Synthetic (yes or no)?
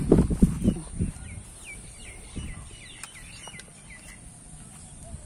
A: no